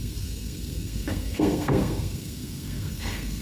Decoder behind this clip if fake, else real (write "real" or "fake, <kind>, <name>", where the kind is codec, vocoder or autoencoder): fake, codec, SNAC